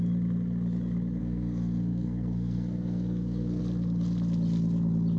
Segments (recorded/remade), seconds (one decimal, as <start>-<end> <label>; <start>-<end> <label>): 0.0-1.2 recorded; 1.2-3.6 remade; 3.6-5.2 recorded